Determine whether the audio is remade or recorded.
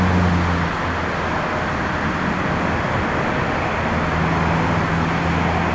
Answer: recorded